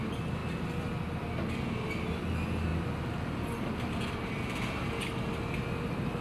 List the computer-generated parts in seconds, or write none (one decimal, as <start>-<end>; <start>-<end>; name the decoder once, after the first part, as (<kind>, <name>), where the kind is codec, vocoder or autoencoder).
none